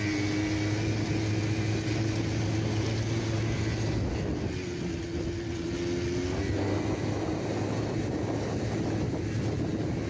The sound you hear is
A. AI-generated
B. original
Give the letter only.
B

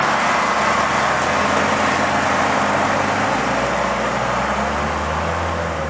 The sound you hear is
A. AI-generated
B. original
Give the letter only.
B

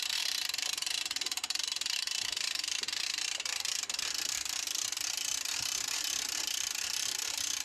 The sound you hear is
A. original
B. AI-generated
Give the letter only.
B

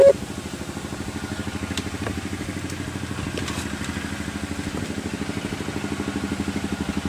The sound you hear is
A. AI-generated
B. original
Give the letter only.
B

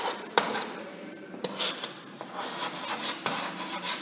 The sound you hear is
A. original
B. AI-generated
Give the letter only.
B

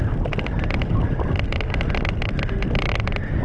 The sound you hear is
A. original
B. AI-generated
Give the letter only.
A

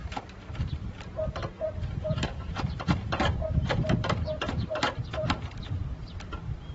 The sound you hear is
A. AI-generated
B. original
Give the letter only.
A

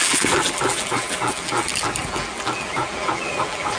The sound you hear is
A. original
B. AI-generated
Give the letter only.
B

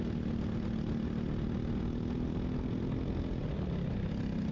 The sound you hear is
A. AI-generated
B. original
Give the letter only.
B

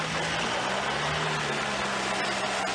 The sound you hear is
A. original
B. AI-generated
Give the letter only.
A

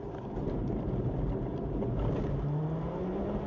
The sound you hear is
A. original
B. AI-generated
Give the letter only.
B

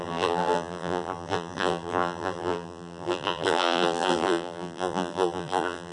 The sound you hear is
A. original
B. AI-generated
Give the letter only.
B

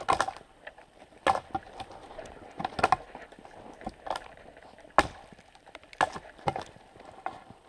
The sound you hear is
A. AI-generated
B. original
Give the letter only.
B